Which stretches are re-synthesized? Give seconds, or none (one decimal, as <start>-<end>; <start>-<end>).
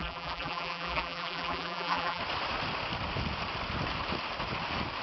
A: 0.0-2.2